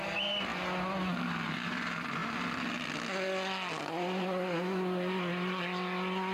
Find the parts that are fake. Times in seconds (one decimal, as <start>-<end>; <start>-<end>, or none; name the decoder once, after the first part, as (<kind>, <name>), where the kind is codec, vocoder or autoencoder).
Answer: none